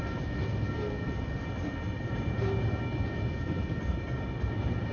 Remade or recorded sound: recorded